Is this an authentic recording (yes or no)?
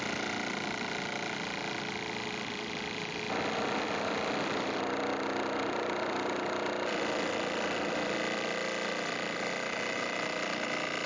yes